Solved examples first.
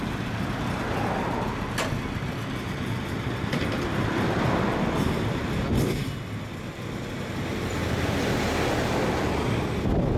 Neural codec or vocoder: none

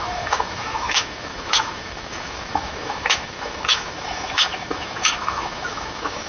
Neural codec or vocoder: autoencoder, DAC-VAE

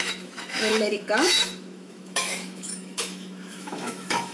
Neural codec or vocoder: autoencoder, DAC-VAE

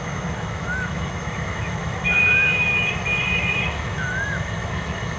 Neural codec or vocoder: autoencoder, DAC-VAE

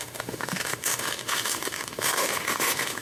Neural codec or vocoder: autoencoder, DAC-VAE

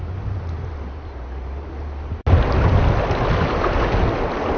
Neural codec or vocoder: none